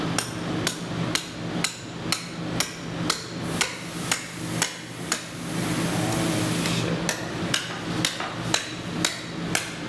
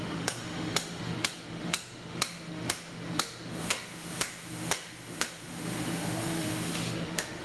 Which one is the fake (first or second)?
second